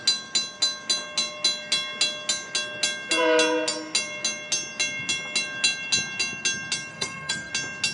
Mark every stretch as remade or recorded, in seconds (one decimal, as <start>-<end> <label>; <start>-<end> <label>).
0.0-6.9 recorded; 6.9-7.5 remade; 7.5-7.9 recorded